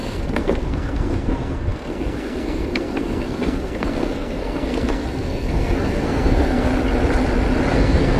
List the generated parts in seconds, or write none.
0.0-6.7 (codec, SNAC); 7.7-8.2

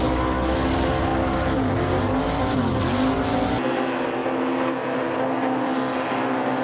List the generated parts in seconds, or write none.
none